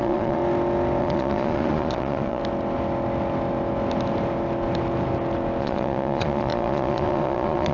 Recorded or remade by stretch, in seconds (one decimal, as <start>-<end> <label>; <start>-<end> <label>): 0.0-0.4 remade; 0.4-1.0 recorded; 1.0-2.4 remade; 2.4-5.6 recorded; 5.6-7.7 remade